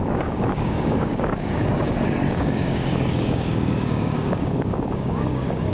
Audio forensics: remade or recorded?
remade